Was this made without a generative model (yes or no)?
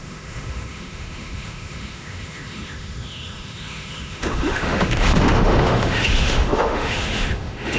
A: no